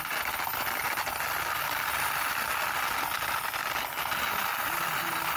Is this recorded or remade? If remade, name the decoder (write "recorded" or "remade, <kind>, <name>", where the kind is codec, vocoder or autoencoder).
recorded